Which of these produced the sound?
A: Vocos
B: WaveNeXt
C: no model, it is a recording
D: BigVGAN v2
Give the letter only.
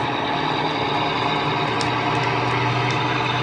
C